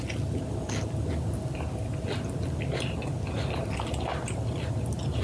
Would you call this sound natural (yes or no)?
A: yes